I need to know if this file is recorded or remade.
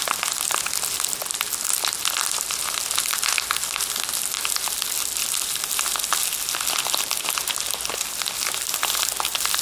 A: recorded